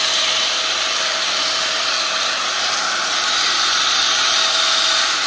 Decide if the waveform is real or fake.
real